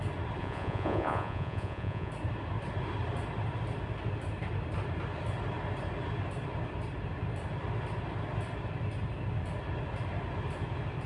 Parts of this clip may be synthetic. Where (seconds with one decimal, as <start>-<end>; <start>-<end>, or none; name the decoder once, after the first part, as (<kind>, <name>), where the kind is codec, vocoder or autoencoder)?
0.4-2.1 (vocoder, Vocos)